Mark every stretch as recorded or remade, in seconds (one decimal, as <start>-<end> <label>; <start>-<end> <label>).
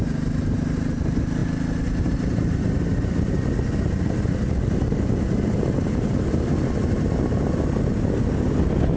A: 0.0-9.0 recorded